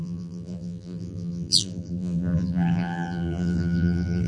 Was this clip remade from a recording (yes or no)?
yes